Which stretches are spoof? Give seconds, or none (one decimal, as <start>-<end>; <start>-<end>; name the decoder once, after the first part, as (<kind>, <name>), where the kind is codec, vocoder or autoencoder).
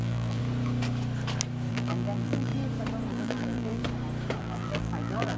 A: 0.0-0.4 (vocoder, BigVGAN v2); 1.7-2.5; 3.1-3.8; 4.4-5.4